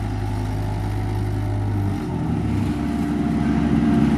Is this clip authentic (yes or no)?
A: yes